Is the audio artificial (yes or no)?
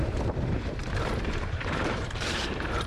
yes